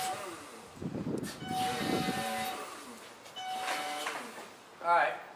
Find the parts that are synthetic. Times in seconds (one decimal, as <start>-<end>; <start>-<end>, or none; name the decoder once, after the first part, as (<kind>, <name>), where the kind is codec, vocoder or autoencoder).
none